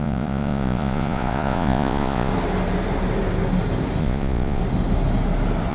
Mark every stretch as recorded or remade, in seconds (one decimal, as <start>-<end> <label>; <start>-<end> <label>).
0.0-2.3 remade; 2.3-4.0 recorded; 4.0-4.6 remade; 4.6-5.7 recorded